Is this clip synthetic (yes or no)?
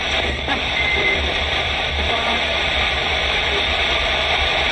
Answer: yes